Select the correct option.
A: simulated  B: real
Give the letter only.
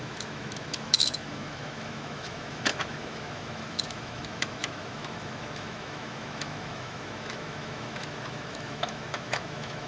A